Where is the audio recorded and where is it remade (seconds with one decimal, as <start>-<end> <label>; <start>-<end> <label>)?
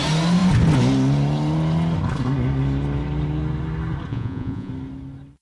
0.0-4.1 recorded; 4.1-4.7 remade; 4.7-5.4 recorded